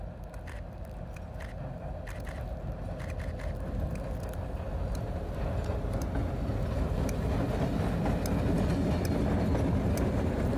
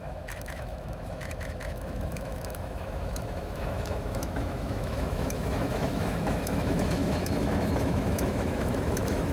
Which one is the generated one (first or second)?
second